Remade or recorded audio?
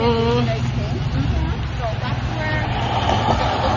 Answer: recorded